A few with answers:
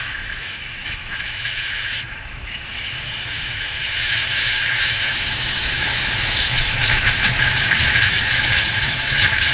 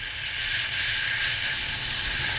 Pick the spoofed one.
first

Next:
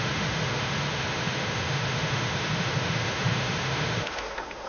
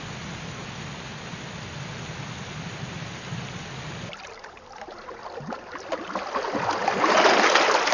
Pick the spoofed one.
first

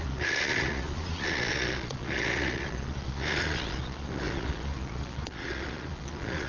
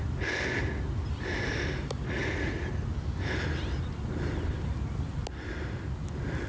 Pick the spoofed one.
first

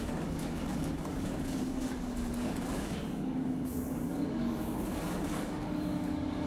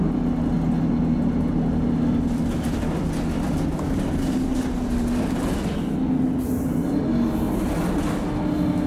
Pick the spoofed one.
first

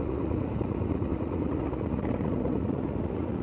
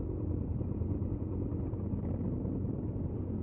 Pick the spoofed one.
first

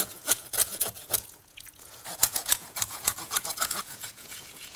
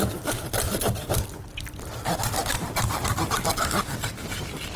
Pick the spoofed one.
first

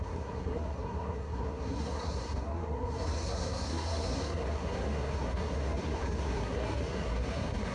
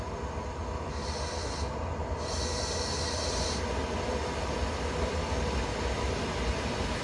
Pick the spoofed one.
first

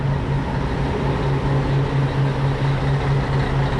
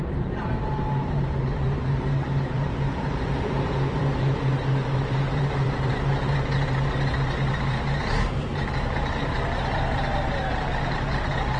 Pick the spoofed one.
second